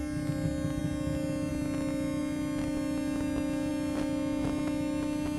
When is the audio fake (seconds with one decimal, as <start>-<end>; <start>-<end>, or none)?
none